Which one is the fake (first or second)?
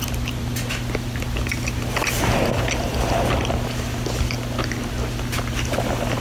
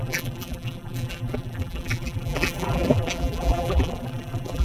second